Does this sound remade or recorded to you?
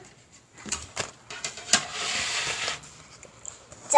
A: remade